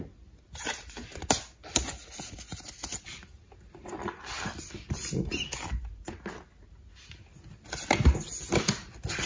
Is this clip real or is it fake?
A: real